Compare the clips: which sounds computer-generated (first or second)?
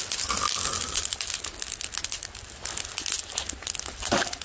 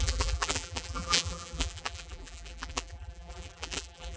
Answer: second